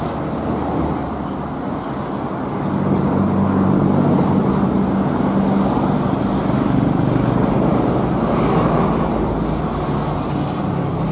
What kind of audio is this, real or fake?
real